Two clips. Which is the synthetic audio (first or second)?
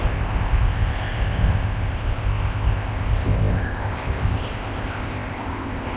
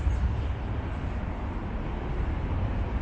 first